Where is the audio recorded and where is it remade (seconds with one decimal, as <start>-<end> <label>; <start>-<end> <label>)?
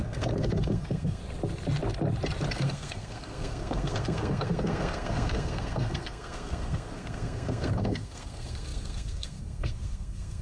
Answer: 0.0-1.2 remade; 1.2-2.5 recorded; 2.5-10.4 remade